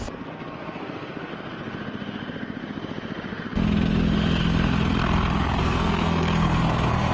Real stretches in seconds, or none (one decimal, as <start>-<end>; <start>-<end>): 1.3-5.6